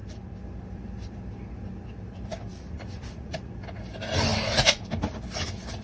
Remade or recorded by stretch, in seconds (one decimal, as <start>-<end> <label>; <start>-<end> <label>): 0.0-2.5 recorded; 2.5-3.5 remade; 3.5-5.8 recorded